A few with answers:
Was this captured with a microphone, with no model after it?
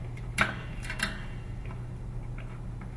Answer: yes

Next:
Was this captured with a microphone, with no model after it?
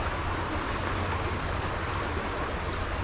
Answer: yes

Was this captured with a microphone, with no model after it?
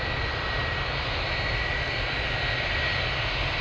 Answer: yes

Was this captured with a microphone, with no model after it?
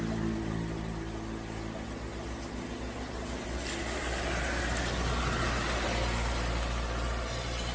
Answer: yes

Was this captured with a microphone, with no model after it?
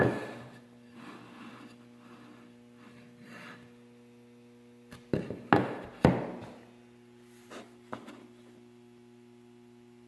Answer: yes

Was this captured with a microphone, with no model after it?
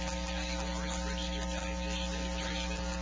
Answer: yes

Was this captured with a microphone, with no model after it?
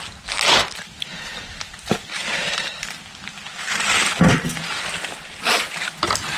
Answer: yes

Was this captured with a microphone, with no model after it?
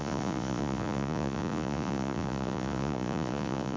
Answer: no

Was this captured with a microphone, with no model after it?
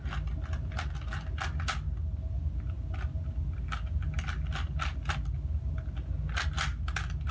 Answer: yes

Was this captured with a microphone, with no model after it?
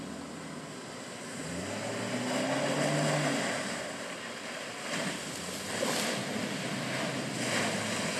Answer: yes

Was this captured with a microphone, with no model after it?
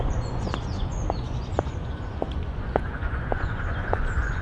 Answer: no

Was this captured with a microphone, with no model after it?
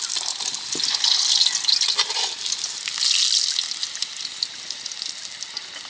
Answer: yes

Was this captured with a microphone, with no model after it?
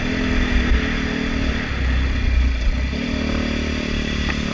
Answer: yes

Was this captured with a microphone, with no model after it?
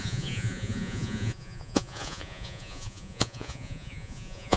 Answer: no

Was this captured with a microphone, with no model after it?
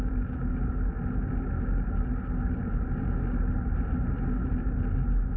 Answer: yes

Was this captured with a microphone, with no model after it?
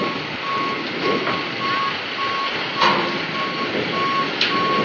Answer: yes